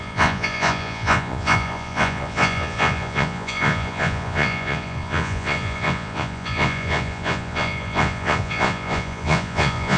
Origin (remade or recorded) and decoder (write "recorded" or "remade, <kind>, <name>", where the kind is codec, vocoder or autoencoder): remade, vocoder, Vocos